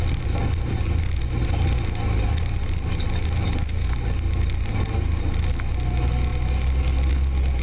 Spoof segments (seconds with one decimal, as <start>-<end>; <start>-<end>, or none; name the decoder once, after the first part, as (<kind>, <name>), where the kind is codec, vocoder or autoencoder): none